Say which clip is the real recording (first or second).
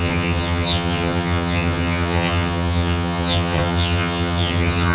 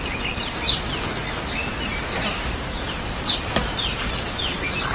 second